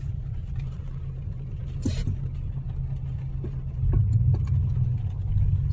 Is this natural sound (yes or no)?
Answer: yes